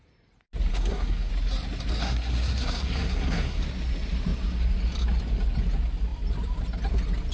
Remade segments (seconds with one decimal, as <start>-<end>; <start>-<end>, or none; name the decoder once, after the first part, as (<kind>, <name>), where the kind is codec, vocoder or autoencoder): 0.7-1.3 (codec, SNAC); 2.0-3.6